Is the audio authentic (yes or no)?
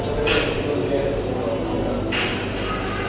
yes